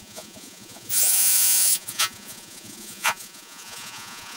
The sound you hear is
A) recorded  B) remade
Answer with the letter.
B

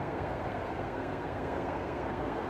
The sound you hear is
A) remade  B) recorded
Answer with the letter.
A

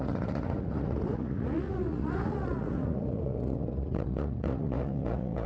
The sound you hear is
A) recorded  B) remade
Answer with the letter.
B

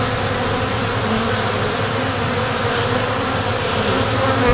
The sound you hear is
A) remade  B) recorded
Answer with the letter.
B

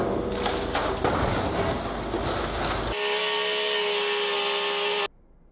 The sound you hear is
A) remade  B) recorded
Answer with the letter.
B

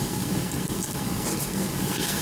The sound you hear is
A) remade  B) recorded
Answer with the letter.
A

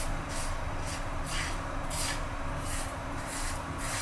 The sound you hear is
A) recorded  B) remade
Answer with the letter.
B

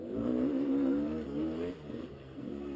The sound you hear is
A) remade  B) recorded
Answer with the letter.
A